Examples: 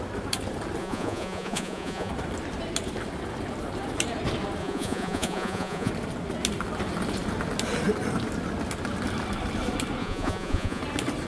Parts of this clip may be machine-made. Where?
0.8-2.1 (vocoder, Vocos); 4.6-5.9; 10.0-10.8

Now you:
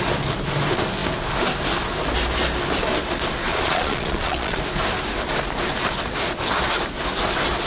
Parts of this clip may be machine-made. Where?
3.5-4.6 (vocoder, Vocos)